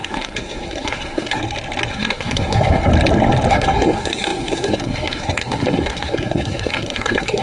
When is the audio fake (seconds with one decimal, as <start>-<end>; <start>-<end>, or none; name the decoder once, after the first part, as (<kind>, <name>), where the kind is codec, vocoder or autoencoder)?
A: 0.0-1.4 (codec, SNAC); 1.9-2.9; 3.5-7.4